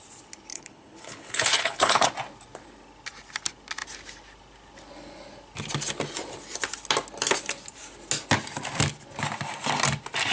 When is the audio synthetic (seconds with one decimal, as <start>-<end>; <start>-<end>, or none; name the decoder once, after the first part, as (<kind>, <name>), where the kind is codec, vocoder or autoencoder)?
0.5-2.1 (codec, HILCodec)